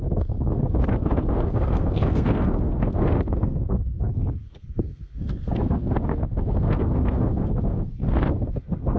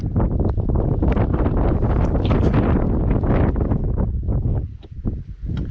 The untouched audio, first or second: second